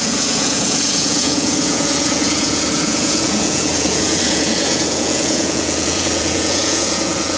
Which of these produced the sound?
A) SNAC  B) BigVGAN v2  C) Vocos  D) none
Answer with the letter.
C